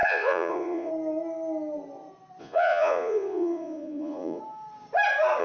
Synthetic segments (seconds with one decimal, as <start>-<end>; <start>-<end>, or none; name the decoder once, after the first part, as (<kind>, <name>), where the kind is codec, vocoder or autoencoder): 0.0-0.9 (vocoder, Vocos); 2.4-4.4